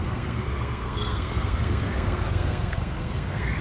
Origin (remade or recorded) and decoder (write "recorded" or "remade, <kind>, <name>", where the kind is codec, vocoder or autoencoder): remade, codec, SNAC